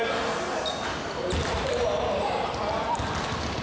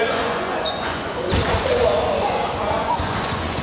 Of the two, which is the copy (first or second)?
second